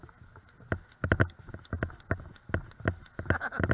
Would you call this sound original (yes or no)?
yes